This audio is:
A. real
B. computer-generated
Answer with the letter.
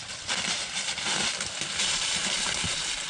A